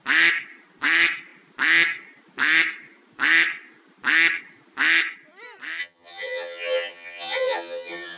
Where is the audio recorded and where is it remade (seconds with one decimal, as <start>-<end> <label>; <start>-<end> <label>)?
0.0-5.8 recorded; 5.8-8.2 remade